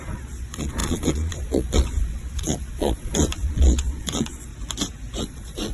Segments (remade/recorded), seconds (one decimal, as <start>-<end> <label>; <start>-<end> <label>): 0.0-4.5 remade; 4.5-5.2 recorded; 5.2-5.7 remade